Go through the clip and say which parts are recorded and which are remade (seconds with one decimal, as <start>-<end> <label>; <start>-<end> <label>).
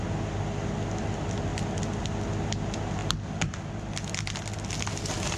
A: 0.0-5.4 recorded